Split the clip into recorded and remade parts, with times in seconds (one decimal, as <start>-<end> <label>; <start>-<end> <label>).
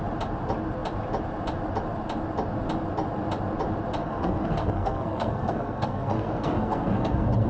0.0-4.0 recorded; 4.0-7.5 remade